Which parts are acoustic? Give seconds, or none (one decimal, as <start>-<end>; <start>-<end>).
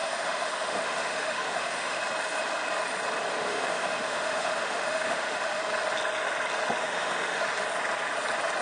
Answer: 2.0-3.4; 5.6-6.8; 7.4-8.6